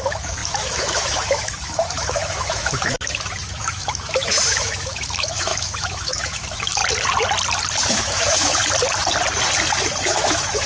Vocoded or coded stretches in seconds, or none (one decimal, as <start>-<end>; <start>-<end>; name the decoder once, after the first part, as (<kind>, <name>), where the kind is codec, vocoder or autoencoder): 0.0-6.8 (autoencoder, DAC-VAE); 7.9-8.6; 10.0-10.7

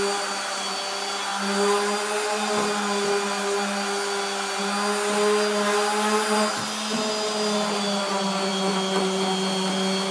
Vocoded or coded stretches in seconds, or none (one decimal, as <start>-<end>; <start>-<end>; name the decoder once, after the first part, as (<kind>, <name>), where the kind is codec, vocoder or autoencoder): none

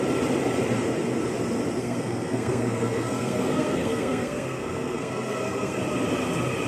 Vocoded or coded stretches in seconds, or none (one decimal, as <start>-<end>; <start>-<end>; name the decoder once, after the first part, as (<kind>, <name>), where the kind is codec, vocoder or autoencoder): 1.8-5.8 (codec, SNAC)

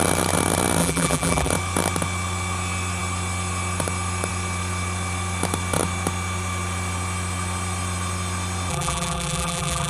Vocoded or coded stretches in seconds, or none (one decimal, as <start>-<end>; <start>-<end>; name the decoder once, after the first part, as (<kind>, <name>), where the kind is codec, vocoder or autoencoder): 0.8-1.5 (vocoder, BigVGAN v2); 8.7-9.9

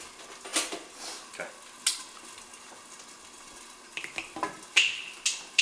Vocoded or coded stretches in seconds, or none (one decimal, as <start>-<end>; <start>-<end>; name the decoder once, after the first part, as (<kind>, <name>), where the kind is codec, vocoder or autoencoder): none

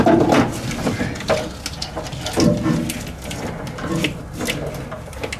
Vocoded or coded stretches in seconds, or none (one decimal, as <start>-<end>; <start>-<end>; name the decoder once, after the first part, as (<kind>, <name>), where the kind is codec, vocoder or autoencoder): none

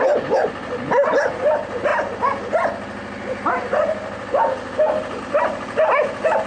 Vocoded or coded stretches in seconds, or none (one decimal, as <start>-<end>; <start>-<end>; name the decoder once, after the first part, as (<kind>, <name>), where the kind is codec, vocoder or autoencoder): none